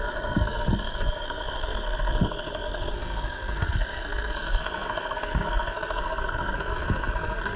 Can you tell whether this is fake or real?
fake